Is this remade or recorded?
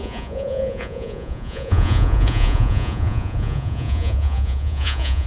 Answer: remade